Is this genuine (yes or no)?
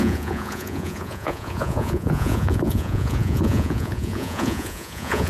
no